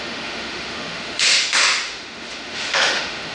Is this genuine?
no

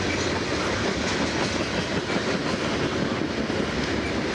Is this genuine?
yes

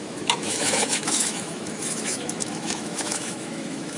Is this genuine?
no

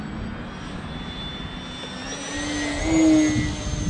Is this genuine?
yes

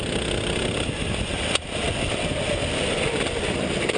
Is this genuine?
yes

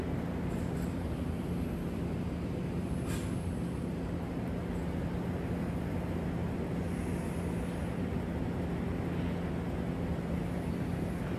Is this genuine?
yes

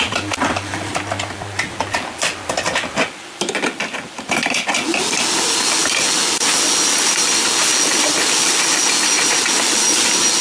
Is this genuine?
yes